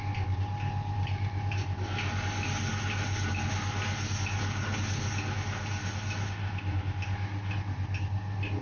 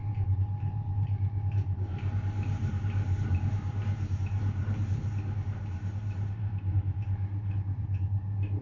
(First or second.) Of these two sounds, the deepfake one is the second